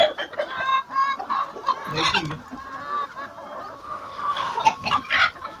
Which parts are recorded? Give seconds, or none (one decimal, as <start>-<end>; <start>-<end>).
0.0-3.8; 4.6-5.6